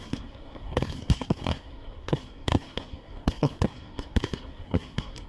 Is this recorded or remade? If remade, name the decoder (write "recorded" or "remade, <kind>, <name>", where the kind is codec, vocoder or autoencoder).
remade, codec, SNAC